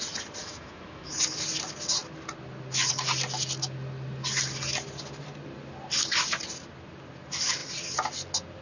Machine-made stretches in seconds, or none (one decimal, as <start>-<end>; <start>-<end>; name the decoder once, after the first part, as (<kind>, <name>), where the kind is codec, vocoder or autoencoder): 0.4-1.1 (autoencoder, DAC-VAE)